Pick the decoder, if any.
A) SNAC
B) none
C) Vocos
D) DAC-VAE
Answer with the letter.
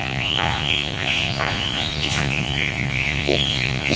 C